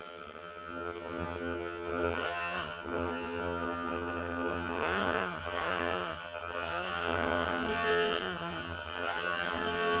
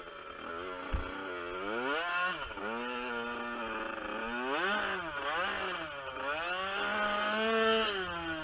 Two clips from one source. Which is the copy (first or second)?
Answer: first